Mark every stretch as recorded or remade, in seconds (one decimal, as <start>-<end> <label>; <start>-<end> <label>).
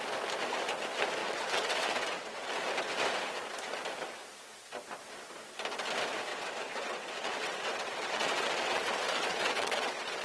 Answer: 0.0-1.2 recorded; 1.2-2.5 remade; 2.5-6.3 recorded; 6.3-10.2 remade